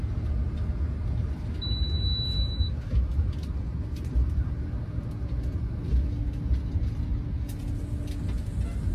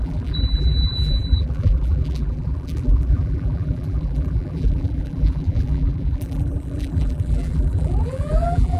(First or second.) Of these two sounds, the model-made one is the second